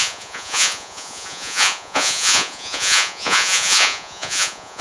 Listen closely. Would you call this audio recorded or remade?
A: remade